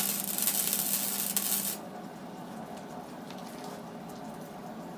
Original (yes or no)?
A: yes